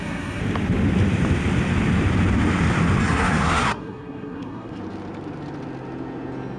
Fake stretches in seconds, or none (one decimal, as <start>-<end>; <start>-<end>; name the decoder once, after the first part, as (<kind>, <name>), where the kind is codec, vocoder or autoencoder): 0.0-0.4 (codec, SNAC); 3.0-4.8